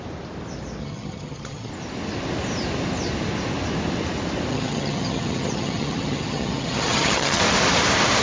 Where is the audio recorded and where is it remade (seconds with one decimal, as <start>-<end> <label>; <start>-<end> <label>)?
0.0-0.8 recorded; 0.8-1.7 remade; 1.7-4.5 recorded; 4.5-7.4 remade; 7.4-8.2 recorded